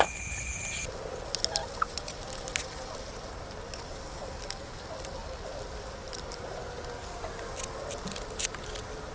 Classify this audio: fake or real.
real